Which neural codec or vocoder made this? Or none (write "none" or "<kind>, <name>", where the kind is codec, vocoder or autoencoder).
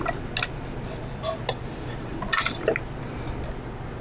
none